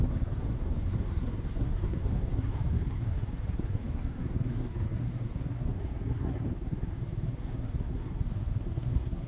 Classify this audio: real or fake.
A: fake